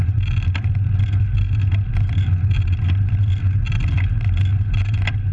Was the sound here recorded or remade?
recorded